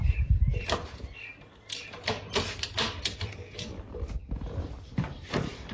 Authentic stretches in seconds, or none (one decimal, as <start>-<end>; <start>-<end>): 0.5-3.9

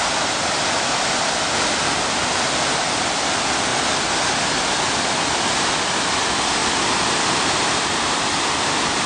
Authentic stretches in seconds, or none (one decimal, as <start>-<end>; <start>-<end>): 0.0-9.1

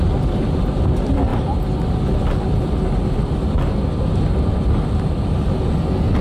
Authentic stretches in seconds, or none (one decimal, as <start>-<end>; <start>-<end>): 0.0-6.2

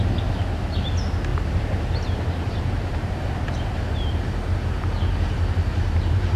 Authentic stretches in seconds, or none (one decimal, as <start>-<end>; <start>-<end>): 0.0-1.3; 4.2-5.7

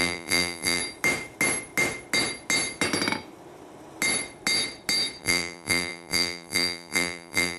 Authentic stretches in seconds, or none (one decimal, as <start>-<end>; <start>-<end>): 0.8-5.2

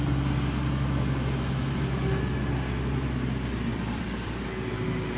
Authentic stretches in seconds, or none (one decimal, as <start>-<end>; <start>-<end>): 0.0-3.7; 4.7-5.2

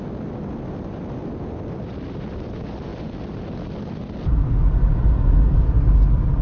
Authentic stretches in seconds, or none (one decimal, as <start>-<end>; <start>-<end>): 0.0-6.4